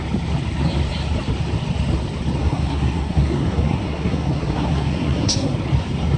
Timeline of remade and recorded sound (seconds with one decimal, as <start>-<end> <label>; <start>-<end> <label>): 0.0-2.4 recorded; 2.4-5.5 remade; 5.5-6.2 recorded